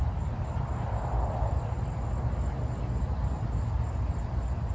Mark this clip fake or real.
real